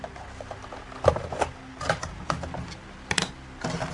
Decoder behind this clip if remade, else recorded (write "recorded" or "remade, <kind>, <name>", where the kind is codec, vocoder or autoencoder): recorded